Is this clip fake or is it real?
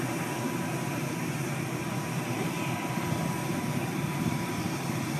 fake